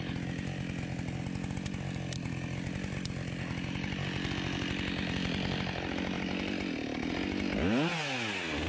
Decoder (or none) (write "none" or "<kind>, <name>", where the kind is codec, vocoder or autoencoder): none